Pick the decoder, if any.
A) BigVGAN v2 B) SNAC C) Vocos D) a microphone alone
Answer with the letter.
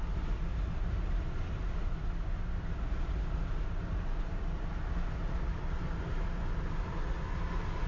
D